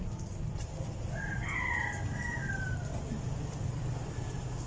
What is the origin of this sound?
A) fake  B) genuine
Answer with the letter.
B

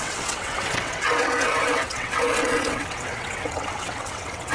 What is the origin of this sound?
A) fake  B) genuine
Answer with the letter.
A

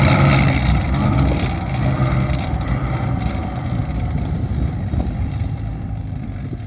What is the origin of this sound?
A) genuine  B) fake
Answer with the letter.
B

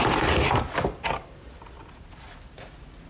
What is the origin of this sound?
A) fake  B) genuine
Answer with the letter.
B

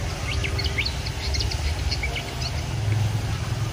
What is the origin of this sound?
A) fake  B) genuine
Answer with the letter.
B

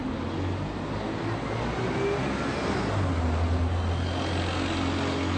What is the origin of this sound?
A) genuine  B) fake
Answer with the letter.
A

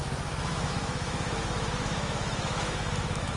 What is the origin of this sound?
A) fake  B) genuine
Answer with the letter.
A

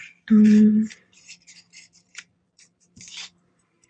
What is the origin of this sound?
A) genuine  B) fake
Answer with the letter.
B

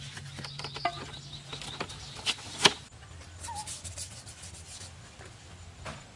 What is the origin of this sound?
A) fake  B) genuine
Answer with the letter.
B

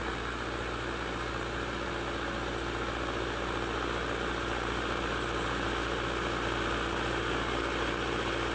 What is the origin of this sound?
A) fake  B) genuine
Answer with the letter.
B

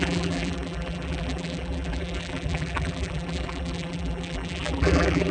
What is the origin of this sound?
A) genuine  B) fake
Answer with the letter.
B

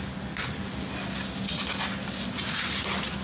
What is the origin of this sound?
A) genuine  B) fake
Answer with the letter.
A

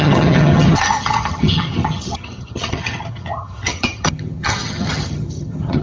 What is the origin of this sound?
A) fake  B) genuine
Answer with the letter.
A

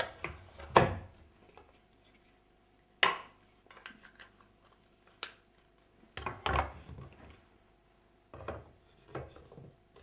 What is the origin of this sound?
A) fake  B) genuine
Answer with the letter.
B